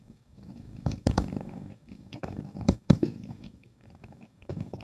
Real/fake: fake